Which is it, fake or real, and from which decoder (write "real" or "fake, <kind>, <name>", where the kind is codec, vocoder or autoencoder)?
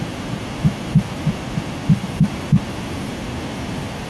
real